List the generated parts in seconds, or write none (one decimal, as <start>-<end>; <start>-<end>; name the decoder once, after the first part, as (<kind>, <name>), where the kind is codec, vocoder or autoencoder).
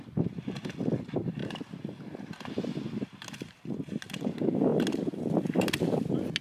none